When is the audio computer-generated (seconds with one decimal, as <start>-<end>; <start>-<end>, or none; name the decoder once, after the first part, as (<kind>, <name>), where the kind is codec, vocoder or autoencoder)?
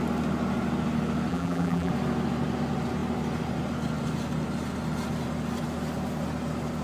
1.3-1.9 (vocoder, BigVGAN v2)